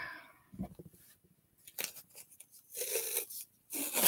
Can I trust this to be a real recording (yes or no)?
yes